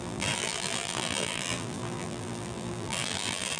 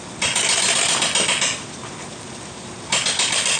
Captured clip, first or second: second